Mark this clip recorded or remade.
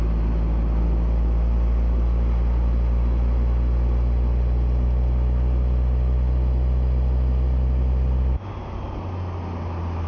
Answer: recorded